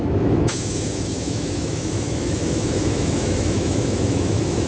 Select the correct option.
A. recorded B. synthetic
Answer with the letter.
B